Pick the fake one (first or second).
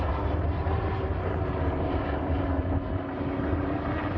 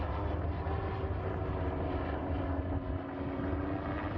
first